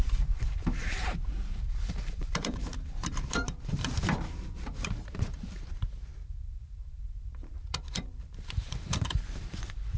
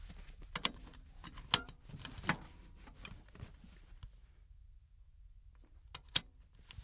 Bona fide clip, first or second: second